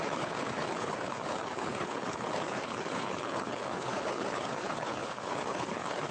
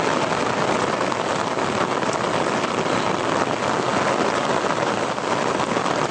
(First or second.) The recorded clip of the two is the second